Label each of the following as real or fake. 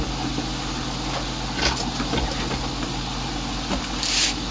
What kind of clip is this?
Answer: real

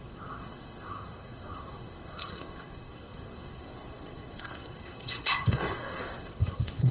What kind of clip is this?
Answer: fake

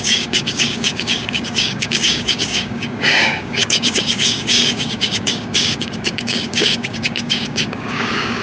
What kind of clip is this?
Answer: fake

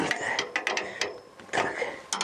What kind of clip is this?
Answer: real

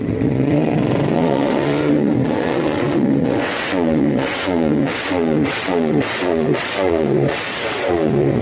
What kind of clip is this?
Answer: fake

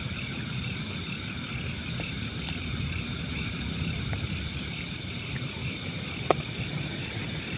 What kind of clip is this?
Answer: real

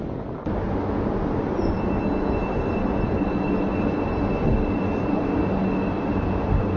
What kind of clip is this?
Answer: real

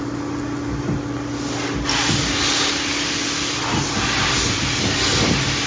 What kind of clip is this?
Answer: real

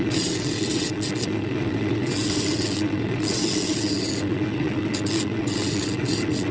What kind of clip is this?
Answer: fake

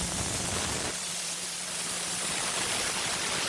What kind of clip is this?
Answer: fake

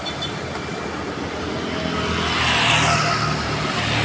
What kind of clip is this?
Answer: real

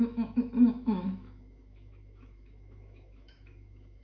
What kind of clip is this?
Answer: fake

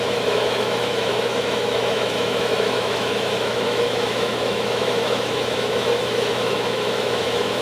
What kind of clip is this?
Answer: fake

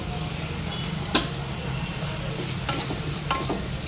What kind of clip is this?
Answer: real